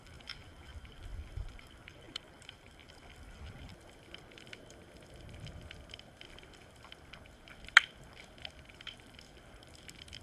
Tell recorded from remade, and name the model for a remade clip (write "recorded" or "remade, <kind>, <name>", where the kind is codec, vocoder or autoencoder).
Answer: remade, vocoder, BigVGAN v2